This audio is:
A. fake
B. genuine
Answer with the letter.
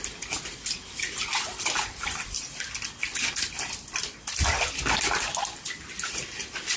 B